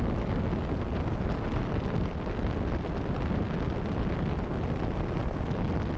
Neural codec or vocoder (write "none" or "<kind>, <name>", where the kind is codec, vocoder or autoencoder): none